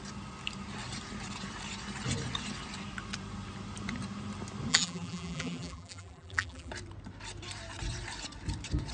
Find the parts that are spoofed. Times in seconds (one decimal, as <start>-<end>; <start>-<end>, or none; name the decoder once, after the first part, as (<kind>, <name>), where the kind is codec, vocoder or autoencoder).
4.7-6.7 (vocoder, BigVGAN v2)